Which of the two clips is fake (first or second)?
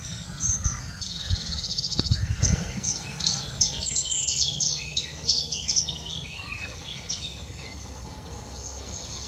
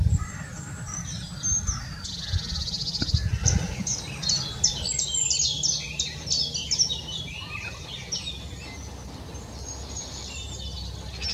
first